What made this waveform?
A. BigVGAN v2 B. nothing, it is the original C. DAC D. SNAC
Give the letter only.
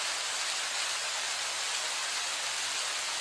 B